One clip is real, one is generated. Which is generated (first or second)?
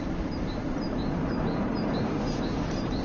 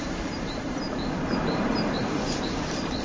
second